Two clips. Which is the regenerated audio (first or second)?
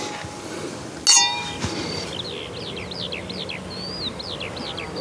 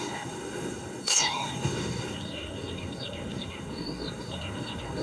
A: second